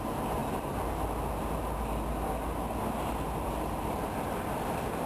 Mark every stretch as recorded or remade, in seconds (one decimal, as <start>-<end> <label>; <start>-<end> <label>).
0.0-5.1 recorded